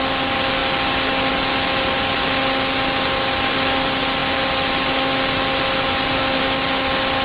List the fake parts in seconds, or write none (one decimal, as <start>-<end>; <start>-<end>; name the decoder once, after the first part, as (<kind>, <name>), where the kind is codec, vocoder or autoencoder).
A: none